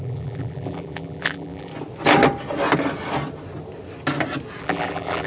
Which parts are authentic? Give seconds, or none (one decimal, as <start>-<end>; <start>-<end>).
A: 1.7-4.6